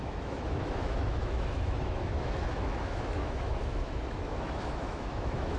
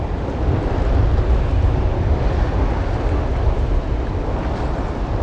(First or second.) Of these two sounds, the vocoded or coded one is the first